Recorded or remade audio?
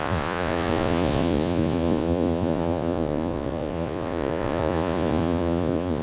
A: remade